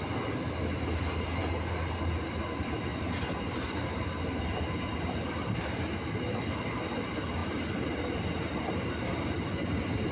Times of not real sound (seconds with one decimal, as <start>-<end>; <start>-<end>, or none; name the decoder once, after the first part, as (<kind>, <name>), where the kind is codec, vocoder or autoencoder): 2.9-5.0 (vocoder, BigVGAN v2)